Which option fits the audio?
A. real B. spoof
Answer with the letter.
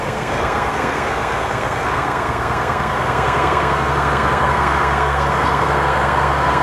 B